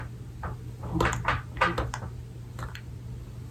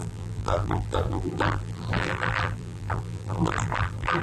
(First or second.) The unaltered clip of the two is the first